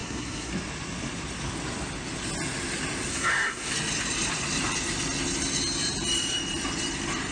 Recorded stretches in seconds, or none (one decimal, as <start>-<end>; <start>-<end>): 0.5-3.1; 3.7-7.3